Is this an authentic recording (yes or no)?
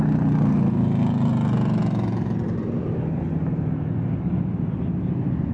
yes